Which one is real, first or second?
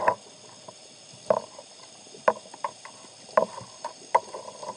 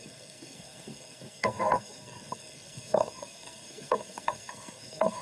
first